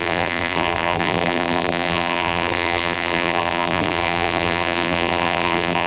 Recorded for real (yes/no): no